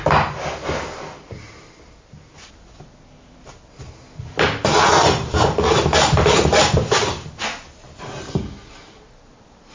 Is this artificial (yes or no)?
no